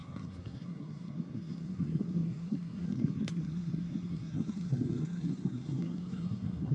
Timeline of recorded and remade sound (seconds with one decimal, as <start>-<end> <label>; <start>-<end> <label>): 0.0-6.7 remade